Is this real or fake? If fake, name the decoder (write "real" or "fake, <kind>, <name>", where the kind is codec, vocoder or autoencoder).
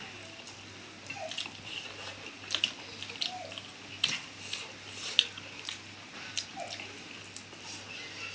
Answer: real